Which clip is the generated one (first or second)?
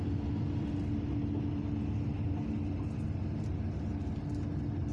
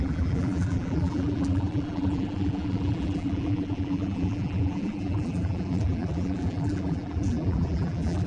second